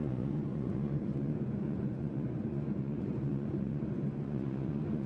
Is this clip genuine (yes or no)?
no